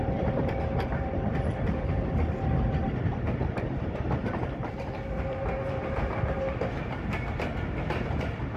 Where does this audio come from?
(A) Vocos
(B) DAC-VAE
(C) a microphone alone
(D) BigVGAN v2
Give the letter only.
D